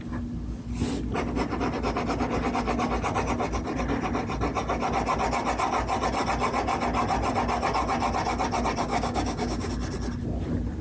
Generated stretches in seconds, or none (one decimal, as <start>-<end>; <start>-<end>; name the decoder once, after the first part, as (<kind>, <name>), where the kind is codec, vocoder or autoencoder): 8.9-9.7 (codec, DAC)

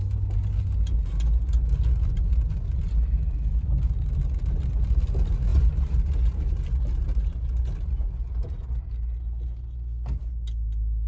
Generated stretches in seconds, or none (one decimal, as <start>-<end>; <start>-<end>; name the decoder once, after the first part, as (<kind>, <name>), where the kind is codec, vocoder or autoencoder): none

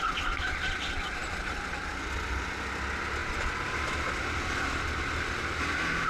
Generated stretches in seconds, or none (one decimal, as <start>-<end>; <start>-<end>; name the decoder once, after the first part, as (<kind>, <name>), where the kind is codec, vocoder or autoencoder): 1.2-1.9 (vocoder, BigVGAN v2); 3.2-5.6

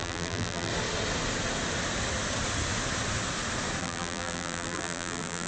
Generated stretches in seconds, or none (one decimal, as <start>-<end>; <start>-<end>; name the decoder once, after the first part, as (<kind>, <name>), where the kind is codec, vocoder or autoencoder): 0.0-0.7 (vocoder, BigVGAN v2); 3.8-5.5

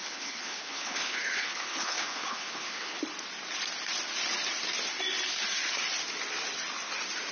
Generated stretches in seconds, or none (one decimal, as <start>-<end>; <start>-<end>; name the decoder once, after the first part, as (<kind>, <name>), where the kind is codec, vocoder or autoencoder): 0.0-3.0 (codec, HILCodec)

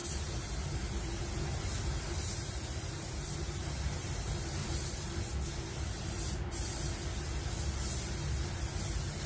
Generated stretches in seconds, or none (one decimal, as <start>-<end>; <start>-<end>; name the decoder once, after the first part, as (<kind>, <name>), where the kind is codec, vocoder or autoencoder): 4.6-5.2 (vocoder, BigVGAN v2)

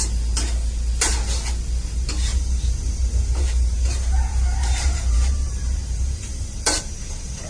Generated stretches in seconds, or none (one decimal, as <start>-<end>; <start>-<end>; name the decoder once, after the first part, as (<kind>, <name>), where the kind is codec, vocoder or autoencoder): 2.3-6.8 (vocoder, BigVGAN v2)

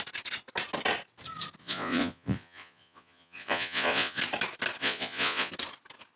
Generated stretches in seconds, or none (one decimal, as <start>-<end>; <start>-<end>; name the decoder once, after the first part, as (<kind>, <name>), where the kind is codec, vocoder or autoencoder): 1.6-4.2 (vocoder, Vocos); 4.8-5.5